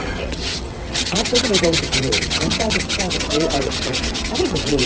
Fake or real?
fake